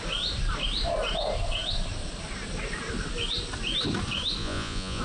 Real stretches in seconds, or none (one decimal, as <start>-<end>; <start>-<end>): 0.0-4.4

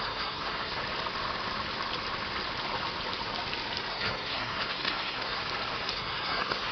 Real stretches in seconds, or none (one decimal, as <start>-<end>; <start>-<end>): 0.8-3.9; 5.4-5.9

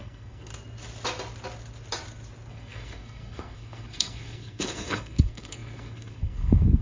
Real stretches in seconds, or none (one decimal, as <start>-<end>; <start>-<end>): 0.5-2.5

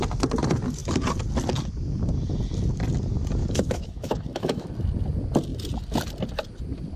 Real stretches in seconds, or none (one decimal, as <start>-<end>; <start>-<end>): 0.0-3.4; 4.7-7.0

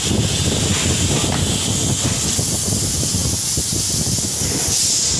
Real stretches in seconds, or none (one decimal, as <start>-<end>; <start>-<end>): 0.0-5.2

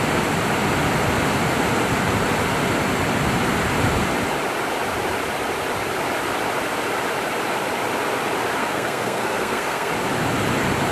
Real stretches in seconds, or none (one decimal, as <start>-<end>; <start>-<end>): 0.0-8.6; 9.9-10.9